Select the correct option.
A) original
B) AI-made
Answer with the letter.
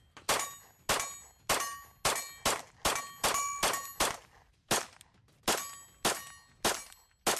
A